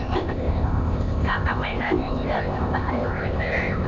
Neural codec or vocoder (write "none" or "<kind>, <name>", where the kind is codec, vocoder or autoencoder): codec, ZipCodec